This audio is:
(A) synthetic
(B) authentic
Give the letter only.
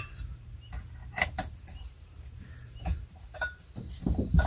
A